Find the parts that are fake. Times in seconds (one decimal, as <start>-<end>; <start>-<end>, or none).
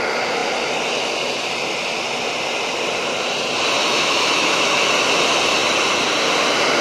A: 3.8-4.9